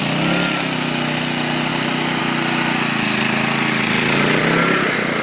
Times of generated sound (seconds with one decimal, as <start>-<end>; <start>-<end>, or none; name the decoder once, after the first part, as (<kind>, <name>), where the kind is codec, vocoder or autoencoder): 1.7-2.2 (vocoder, BigVGAN v2)